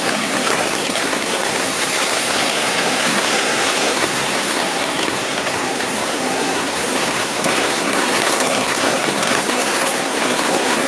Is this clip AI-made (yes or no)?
yes